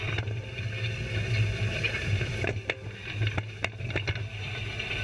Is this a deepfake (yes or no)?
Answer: no